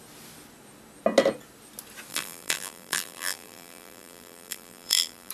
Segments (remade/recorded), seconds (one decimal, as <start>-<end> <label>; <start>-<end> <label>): 0.0-2.1 recorded; 2.1-5.3 remade